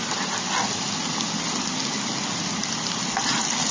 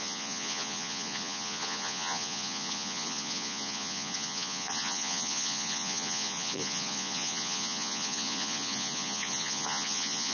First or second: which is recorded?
first